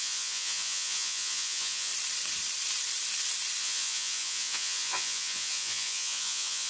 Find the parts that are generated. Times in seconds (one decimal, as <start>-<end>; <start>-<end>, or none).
0.0-1.9; 3.6-6.7